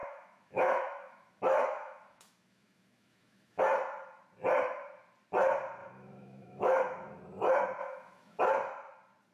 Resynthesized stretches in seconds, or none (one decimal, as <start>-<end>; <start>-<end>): 0.0-3.6; 5.8-7.2; 7.8-8.4